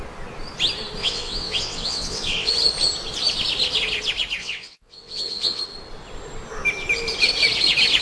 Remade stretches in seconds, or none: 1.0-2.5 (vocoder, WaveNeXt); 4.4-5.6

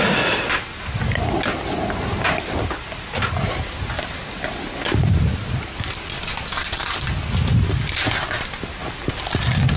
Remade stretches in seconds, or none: none

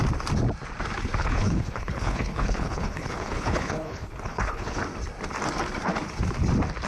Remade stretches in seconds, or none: 1.2-4.8 (codec, HILCodec)

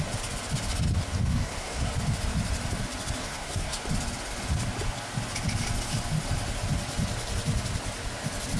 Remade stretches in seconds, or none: 1.3-1.9 (codec, SNAC); 3.2-3.8

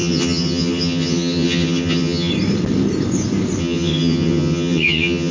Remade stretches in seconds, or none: 0.0-2.3 (vocoder, HiFi-GAN); 3.6-5.3

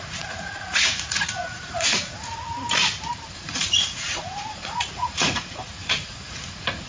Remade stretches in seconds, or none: 0.0-2.3 (vocoder, Vocos); 3.3-6.9